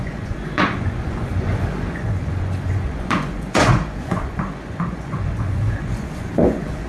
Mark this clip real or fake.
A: fake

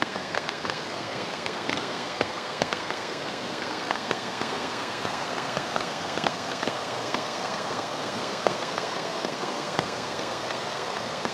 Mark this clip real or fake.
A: fake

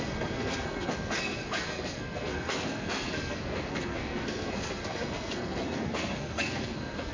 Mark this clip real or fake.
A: fake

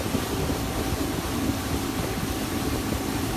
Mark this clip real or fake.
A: real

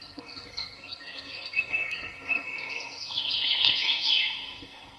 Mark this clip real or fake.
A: fake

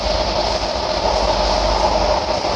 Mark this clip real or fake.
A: real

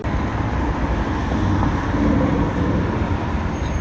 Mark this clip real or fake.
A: real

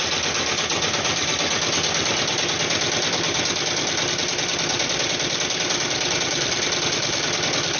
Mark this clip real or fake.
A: real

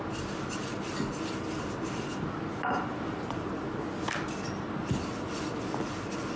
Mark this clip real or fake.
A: real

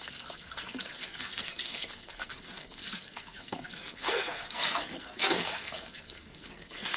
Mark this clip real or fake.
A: fake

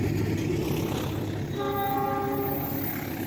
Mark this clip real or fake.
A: real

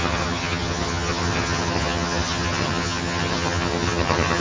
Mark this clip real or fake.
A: fake